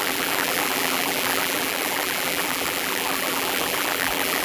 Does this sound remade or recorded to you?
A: remade